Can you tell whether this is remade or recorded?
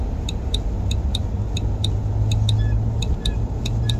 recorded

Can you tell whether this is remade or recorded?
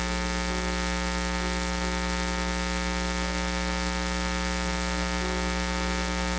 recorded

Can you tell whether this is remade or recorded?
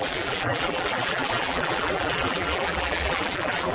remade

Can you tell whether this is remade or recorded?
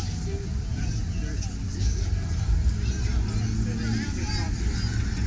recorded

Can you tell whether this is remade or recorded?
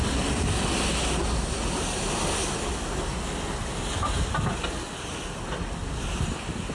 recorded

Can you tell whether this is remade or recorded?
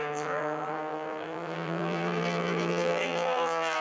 remade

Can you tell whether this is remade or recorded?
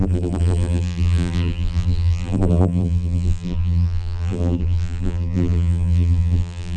remade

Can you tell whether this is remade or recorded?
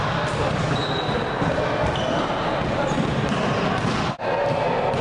recorded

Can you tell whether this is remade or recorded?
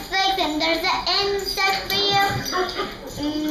recorded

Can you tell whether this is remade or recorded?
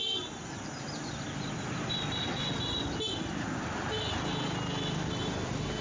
recorded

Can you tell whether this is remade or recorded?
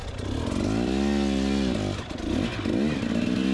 recorded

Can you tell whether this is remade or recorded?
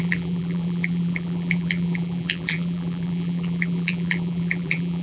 remade